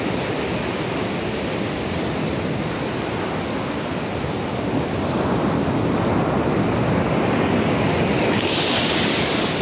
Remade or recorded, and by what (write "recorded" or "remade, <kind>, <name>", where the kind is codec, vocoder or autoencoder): recorded